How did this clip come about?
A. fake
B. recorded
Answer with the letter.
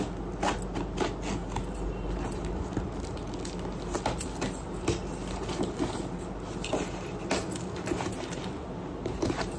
B